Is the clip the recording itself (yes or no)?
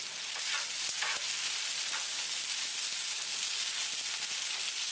yes